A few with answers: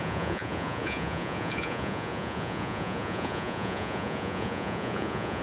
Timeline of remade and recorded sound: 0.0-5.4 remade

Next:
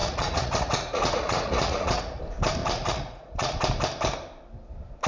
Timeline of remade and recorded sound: 0.0-2.2 remade; 2.2-2.6 recorded; 2.6-3.6 remade; 3.6-5.1 recorded

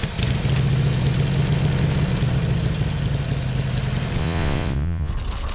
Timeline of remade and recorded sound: 0.0-4.2 recorded; 4.2-5.1 remade; 5.1-5.5 recorded

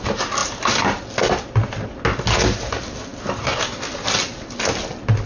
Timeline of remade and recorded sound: 0.0-5.3 recorded

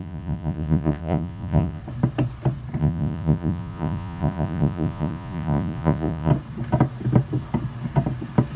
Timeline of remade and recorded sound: 0.0-1.8 remade; 1.8-2.8 recorded; 2.8-6.3 remade; 6.3-8.6 recorded

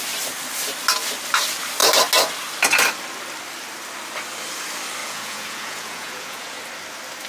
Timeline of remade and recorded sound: 0.0-5.0 recorded; 5.0-6.6 remade; 6.6-7.3 recorded

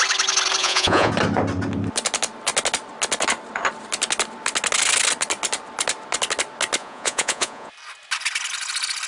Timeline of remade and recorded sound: 0.0-0.6 recorded; 0.6-1.1 remade; 1.1-6.8 recorded; 6.8-7.7 remade; 7.7-9.1 recorded